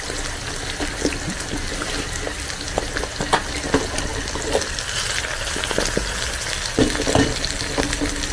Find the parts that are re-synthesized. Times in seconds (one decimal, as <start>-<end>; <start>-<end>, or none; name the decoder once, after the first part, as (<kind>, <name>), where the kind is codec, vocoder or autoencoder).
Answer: none